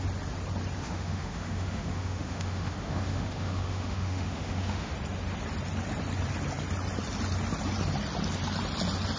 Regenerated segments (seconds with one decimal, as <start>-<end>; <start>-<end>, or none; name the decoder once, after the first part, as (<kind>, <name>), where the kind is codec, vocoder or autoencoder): 0.8-4.9 (autoencoder, DAC-VAE)